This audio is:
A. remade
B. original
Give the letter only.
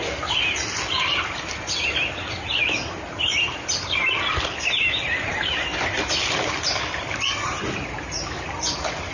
B